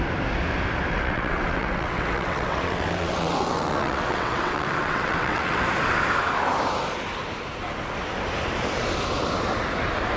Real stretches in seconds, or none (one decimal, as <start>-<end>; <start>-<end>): 0.0-0.9; 5.6-10.2